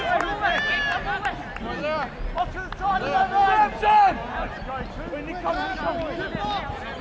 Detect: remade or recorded recorded